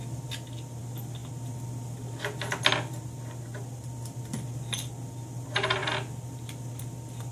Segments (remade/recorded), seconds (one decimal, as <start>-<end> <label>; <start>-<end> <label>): 0.0-7.3 recorded